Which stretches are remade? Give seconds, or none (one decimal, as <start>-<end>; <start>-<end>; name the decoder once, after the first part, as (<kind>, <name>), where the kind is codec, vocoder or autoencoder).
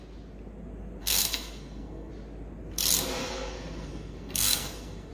1.0-2.1 (codec, SNAC); 3.2-5.1